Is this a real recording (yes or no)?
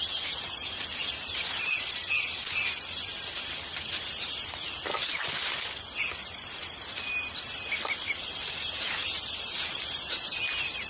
yes